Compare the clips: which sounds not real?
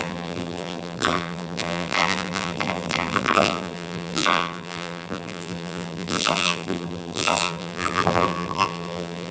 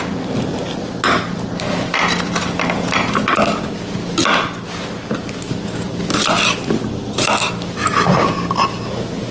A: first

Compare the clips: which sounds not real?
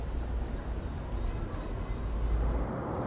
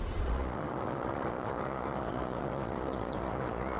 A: second